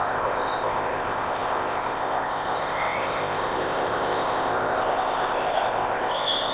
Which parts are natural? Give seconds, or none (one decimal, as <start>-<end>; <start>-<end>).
none